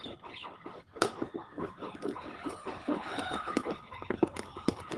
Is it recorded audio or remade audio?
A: remade